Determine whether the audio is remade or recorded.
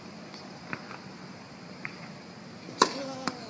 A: remade